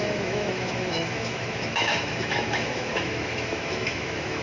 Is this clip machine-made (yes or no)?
yes